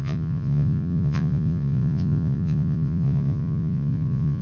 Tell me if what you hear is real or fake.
fake